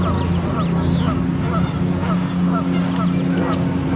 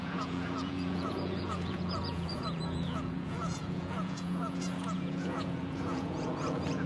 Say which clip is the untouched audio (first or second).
first